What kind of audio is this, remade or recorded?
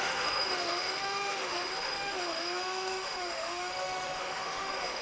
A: remade